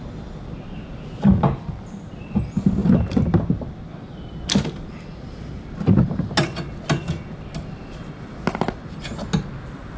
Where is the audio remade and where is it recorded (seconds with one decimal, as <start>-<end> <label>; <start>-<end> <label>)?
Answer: 0.0-10.0 recorded